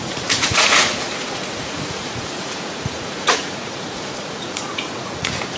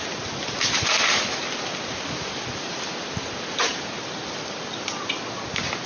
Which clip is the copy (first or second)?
first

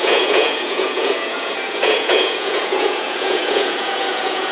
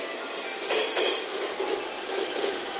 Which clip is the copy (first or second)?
first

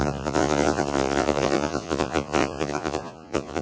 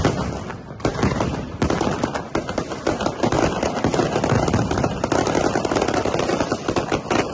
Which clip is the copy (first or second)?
first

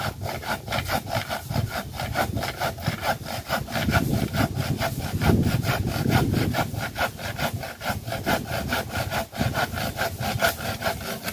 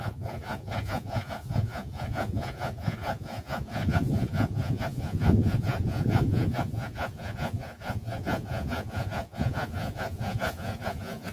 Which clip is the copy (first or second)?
second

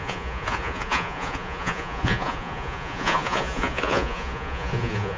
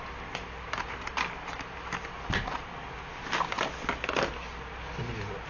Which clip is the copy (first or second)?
first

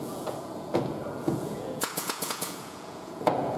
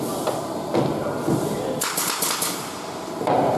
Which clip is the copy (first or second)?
first